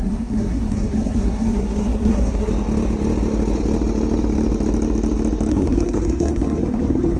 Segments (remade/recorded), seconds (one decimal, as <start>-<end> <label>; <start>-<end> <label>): 0.0-2.5 remade; 2.5-5.5 recorded; 5.5-7.2 remade